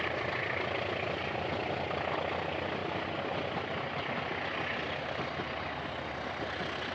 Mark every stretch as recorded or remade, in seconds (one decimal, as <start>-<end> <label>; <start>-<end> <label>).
0.0-6.9 recorded